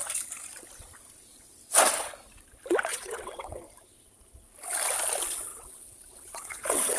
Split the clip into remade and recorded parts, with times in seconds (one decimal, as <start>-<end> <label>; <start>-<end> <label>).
0.0-2.9 recorded; 2.9-3.6 remade; 3.6-5.5 recorded; 5.5-7.0 remade